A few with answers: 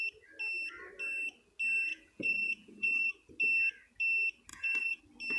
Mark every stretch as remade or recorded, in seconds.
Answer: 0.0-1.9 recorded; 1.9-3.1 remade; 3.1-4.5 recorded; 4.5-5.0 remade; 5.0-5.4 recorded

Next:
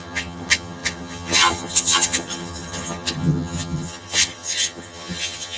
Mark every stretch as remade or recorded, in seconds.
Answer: 0.0-5.6 remade